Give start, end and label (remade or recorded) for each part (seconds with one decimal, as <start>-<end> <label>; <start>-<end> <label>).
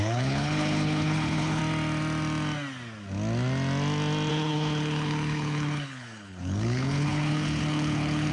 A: 0.0-1.6 remade; 1.6-4.3 recorded; 4.3-8.3 remade